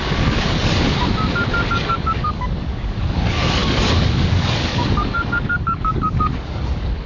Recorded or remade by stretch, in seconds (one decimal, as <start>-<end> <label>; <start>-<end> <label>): 0.0-1.0 remade; 1.0-1.7 recorded; 1.7-7.1 remade